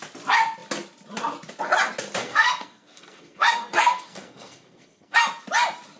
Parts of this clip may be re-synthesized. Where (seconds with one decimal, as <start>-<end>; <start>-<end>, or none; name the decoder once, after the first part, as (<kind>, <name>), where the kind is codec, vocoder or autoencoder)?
2.2-5.2 (codec, SNAC)